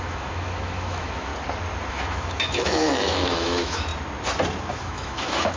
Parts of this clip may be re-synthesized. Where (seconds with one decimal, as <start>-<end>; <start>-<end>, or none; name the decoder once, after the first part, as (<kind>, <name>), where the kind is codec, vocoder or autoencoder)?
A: 0.0-1.3 (autoencoder, DAC-VAE); 1.9-3.9; 4.6-5.6

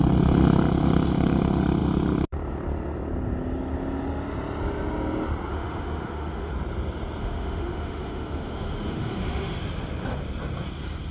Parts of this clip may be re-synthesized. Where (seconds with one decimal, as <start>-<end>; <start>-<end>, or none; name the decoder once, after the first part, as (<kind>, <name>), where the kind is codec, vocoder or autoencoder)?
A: 5.5-6.5 (autoencoder, DAC-VAE); 7.2-9.6

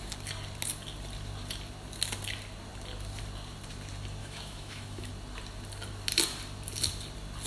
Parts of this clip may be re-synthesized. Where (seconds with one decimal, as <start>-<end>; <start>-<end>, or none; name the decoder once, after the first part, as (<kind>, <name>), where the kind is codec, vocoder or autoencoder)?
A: 4.2-5.1 (autoencoder, DAC-VAE)

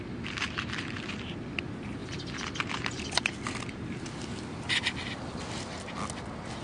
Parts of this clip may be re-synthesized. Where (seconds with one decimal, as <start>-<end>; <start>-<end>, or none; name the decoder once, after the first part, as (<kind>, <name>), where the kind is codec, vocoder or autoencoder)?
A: none

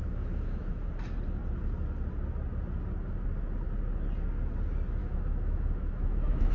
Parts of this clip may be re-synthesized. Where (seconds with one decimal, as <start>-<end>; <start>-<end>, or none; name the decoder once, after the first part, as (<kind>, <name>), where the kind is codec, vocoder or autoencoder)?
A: 0.0-0.9 (autoencoder, DAC-VAE); 5.0-6.5

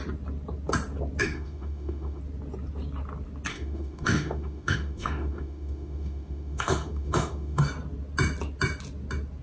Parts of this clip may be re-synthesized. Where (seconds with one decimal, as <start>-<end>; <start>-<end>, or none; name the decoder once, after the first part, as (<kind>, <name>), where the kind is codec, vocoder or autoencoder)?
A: 1.2-2.2 (autoencoder, DAC-VAE); 3.5-7.6